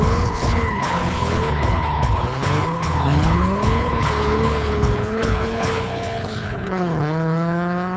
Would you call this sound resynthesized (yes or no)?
yes